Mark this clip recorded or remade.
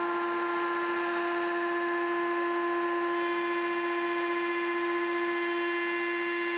recorded